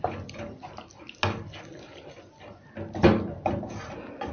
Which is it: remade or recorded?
recorded